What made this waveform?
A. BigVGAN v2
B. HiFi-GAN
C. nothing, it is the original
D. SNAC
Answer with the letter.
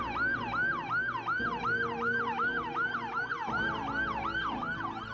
C